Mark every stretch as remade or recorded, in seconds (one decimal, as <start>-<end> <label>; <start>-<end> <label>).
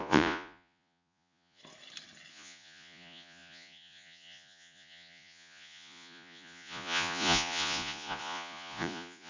0.0-1.6 remade; 1.6-2.3 recorded; 2.3-9.3 remade